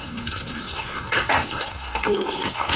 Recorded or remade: remade